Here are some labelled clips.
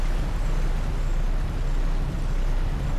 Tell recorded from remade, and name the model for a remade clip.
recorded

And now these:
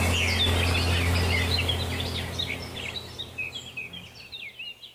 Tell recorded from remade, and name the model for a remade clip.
recorded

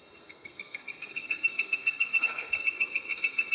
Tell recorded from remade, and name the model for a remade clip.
remade, codec, SNAC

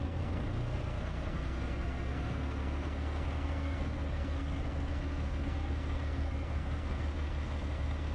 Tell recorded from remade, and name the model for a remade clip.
remade, codec, SNAC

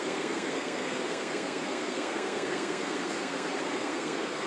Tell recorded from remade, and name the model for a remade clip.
remade, codec, SNAC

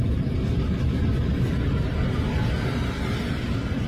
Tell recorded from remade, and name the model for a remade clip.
recorded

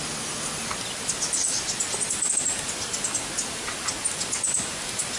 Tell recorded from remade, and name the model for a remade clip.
recorded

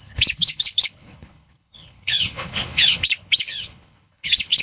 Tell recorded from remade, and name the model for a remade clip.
remade, codec, HILCodec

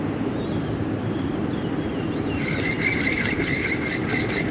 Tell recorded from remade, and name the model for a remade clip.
remade, vocoder, BigVGAN v2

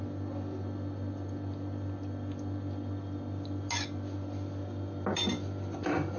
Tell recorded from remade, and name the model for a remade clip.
recorded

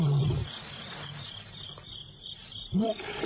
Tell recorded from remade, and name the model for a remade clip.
remade, vocoder, BigVGAN v2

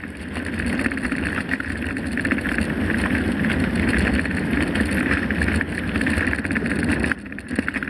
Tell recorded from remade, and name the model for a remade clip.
recorded